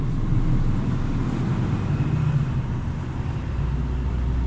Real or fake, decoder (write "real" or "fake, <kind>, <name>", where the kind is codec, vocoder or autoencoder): real